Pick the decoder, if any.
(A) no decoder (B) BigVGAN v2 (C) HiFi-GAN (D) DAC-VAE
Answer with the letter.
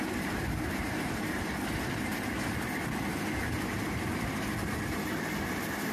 A